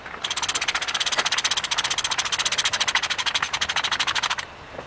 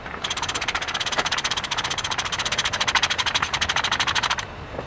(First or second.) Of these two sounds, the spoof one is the second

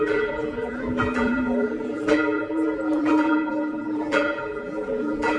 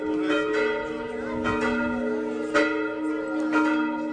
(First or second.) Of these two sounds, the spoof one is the first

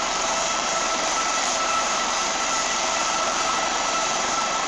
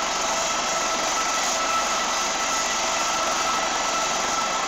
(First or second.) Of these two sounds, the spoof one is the first